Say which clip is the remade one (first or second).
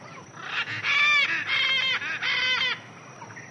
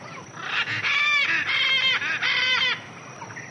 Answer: second